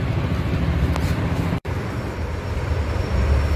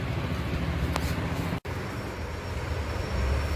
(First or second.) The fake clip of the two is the first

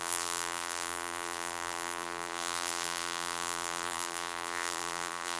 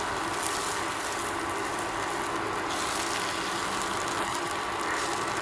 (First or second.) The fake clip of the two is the first